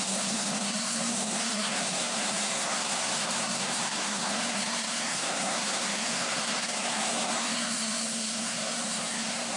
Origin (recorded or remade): remade